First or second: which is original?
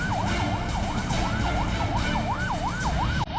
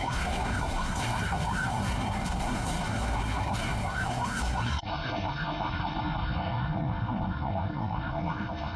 first